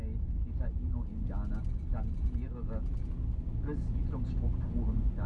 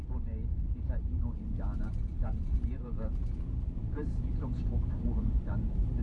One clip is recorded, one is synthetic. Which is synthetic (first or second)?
second